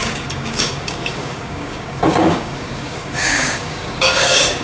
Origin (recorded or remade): remade